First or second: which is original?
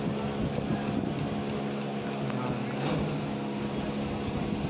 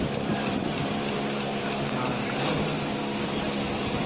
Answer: first